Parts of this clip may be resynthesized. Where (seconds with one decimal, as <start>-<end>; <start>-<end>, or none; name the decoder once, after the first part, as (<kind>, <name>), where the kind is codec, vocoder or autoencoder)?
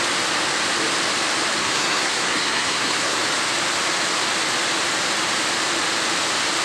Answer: 1.6-3.2 (codec, SNAC)